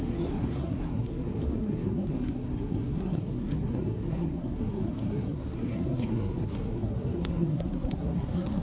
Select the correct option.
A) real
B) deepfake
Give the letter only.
B